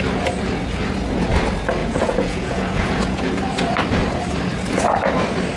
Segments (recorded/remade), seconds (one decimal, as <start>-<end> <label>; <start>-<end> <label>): 0.0-1.8 recorded; 1.8-3.3 remade; 3.3-5.6 recorded